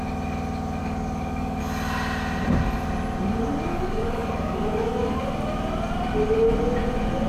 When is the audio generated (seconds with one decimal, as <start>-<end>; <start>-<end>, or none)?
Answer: 0.8-1.6; 3.7-5.2